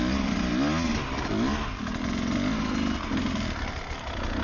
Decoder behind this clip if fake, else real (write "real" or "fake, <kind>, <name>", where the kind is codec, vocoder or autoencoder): real